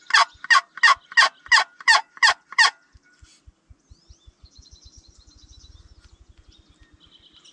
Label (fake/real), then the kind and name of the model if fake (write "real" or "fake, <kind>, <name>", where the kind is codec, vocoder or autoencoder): real